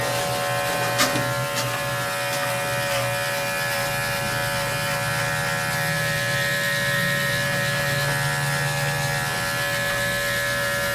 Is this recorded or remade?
recorded